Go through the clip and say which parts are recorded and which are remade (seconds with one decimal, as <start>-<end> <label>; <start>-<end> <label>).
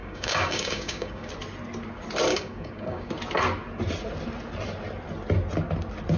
0.0-1.3 remade; 1.3-2.3 recorded; 2.3-3.1 remade; 3.1-6.2 recorded